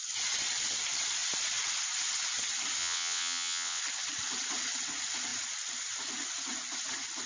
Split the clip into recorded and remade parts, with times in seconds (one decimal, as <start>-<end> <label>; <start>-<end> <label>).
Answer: 0.0-2.8 recorded; 2.8-3.8 remade; 3.8-7.3 recorded